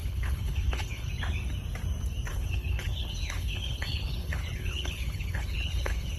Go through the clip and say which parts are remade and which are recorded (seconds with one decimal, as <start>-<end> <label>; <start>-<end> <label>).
0.0-1.1 remade; 1.1-2.3 recorded; 2.3-6.2 remade

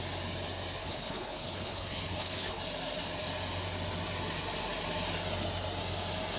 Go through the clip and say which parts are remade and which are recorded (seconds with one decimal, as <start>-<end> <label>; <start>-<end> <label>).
0.0-0.8 recorded; 0.8-2.6 remade; 2.6-6.4 recorded